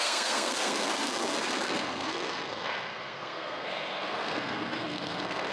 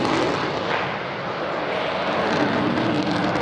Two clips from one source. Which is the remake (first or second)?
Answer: first